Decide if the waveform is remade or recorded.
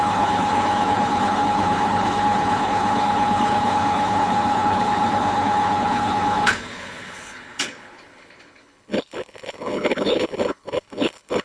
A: remade